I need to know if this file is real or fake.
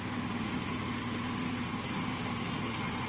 real